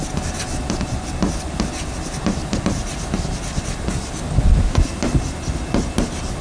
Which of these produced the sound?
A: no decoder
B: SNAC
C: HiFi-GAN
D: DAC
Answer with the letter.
A